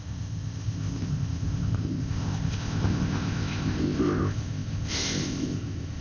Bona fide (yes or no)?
no